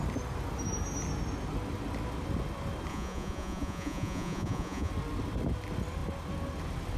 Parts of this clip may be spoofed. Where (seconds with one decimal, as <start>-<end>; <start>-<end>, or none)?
2.9-4.9